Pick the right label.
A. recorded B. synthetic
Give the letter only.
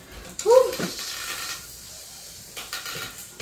B